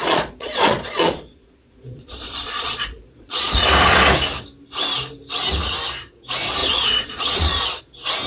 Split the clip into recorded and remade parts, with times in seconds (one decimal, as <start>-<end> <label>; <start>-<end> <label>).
0.0-3.7 remade; 3.7-6.6 recorded; 6.6-7.8 remade; 7.8-8.3 recorded